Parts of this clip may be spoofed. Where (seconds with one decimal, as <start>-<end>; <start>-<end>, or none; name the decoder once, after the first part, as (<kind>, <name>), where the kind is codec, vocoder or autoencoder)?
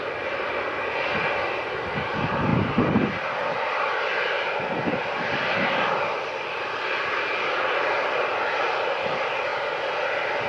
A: none